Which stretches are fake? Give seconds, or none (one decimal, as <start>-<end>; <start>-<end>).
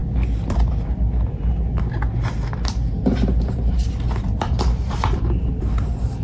3.7-6.2